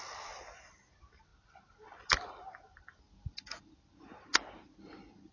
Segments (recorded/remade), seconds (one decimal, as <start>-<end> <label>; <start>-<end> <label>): 0.0-5.3 recorded